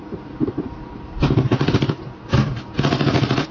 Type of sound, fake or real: fake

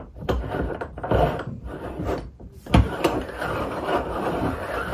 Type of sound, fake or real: fake